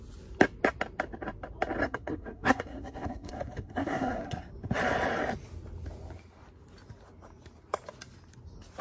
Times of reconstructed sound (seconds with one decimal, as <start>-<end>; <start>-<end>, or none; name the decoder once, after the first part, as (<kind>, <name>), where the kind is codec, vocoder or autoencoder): 1.8-4.5 (codec, SNAC)